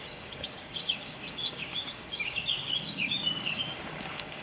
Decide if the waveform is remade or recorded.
remade